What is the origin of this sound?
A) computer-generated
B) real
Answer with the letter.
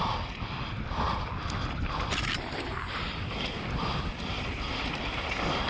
B